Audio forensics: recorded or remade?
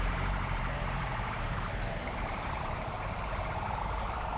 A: remade